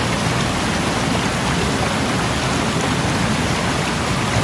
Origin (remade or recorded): recorded